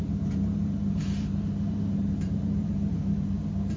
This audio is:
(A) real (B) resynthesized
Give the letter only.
B